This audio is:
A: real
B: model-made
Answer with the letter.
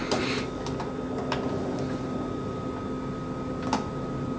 A